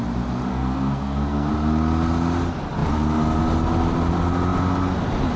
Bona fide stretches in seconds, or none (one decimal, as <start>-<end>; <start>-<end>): 0.0-0.5; 1.5-5.4